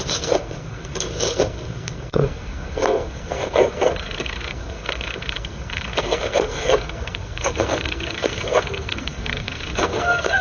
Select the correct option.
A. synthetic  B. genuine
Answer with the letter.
A